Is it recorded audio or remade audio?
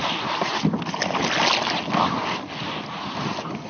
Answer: recorded